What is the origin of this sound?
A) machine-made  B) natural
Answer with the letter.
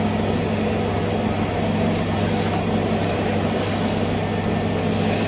B